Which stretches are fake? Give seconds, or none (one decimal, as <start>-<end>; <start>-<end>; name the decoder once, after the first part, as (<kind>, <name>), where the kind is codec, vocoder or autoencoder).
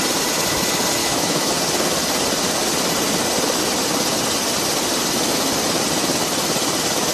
1.0-1.5 (autoencoder, DAC-VAE)